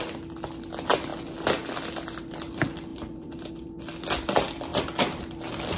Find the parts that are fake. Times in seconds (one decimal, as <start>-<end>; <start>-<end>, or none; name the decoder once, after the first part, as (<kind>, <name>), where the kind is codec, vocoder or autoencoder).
2.9-3.5 (vocoder, BigVGAN v2)